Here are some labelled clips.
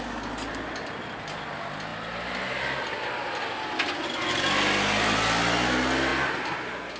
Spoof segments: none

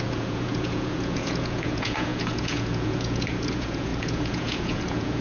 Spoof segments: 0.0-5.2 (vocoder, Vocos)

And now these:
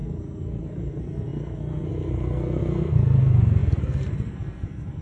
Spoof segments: 0.0-5.0 (codec, SNAC)

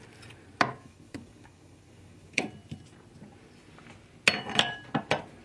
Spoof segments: 0.8-2.4 (codec, DAC)